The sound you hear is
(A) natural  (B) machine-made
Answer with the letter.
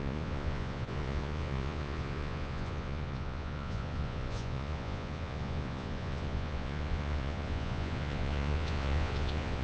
B